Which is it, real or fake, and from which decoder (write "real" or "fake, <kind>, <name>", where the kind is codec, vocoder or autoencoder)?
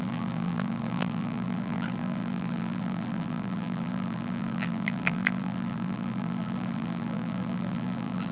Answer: fake, vocoder, BigVGAN v2